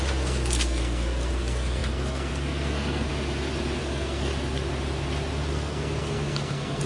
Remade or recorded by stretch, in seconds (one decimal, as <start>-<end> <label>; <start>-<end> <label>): 0.0-3.1 remade; 3.1-3.8 recorded; 3.8-4.3 remade; 4.3-5.5 recorded; 5.5-6.9 remade